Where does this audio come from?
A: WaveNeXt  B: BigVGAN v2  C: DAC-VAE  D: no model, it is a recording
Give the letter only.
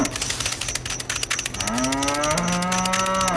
D